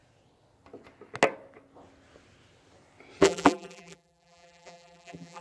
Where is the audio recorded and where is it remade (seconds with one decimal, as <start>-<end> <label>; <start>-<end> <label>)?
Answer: 0.0-3.2 recorded; 3.2-5.4 remade